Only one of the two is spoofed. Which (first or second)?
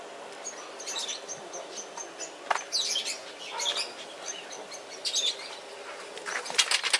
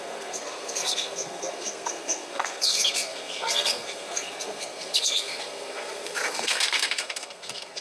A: second